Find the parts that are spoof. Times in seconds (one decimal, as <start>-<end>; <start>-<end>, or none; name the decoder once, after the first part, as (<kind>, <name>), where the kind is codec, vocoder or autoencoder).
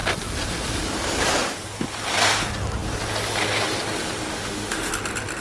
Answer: 4.3-4.9 (autoencoder, DAC-VAE)